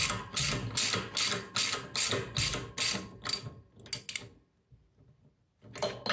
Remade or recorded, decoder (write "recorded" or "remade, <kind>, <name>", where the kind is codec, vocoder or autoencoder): recorded